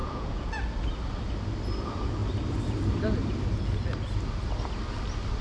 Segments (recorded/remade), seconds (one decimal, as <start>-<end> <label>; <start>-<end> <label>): 0.0-0.6 remade; 0.6-5.4 recorded